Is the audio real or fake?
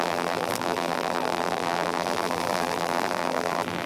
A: fake